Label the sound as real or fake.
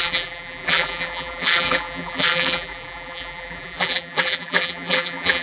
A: fake